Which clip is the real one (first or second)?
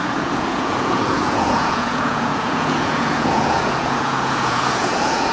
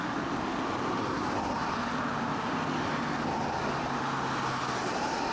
second